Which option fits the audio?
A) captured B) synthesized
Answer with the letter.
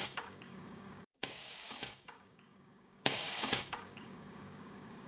B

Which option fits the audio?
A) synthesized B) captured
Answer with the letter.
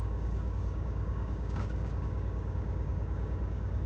A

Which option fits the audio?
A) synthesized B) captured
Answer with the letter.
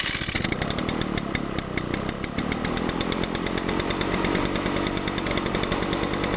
B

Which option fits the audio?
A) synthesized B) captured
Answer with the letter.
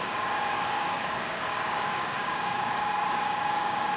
A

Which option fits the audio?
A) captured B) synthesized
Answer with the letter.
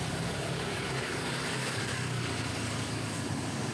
B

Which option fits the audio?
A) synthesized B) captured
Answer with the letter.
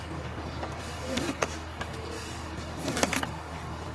A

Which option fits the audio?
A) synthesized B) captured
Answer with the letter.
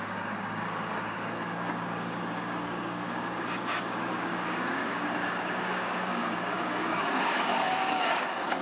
A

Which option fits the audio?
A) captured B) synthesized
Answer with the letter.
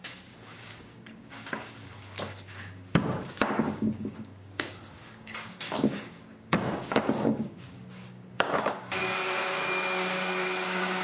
B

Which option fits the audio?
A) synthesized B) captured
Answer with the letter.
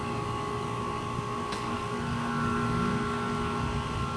A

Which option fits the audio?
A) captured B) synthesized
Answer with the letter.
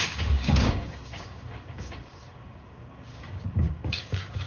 B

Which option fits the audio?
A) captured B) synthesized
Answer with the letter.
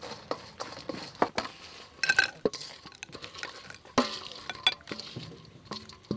A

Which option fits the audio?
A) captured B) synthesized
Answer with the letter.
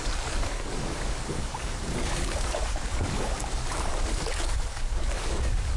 B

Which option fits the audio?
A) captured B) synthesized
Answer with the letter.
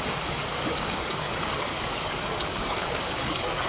B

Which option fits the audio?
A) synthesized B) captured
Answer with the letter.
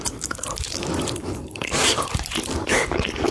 A